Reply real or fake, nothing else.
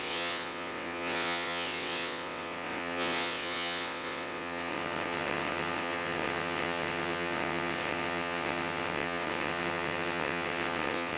fake